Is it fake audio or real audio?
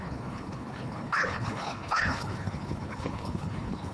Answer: fake